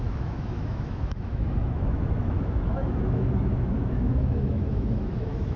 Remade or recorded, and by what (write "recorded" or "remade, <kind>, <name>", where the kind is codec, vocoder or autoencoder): remade, autoencoder, DAC-VAE